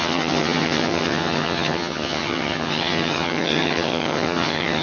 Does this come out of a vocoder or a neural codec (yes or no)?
yes